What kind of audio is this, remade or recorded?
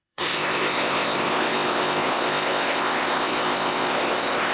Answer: remade